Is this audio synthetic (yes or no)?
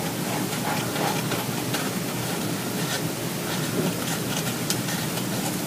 no